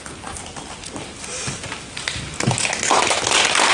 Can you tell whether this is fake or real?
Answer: real